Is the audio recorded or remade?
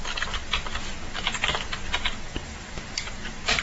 recorded